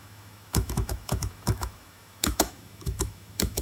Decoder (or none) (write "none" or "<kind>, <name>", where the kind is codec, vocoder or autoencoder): autoencoder, DAC-VAE